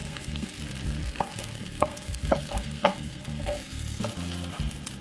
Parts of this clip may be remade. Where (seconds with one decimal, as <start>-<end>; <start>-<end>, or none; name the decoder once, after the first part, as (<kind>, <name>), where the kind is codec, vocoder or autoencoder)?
0.0-0.6 (codec, SNAC); 1.0-4.0